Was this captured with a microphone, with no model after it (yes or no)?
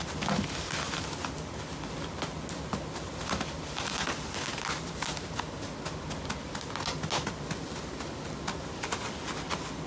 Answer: yes